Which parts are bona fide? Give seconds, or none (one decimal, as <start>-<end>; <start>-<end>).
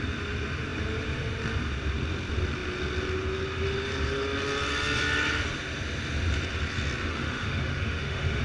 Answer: 0.0-7.1